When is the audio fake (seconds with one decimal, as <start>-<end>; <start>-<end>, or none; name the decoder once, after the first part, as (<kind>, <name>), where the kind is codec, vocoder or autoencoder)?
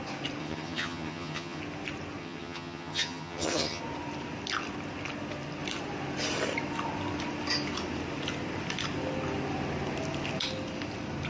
0.4-1.6 (vocoder, HiFi-GAN); 2.2-3.8